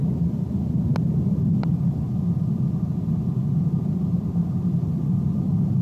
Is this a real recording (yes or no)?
yes